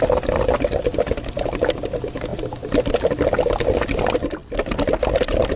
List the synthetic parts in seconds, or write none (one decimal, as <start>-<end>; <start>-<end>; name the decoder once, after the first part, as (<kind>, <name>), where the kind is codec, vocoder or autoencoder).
none